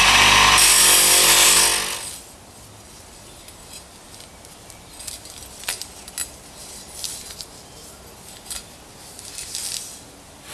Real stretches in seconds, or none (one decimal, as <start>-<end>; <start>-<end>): 0.0-10.5